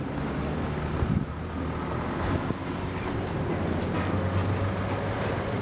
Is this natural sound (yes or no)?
yes